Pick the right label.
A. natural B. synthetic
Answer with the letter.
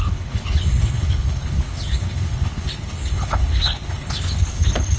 B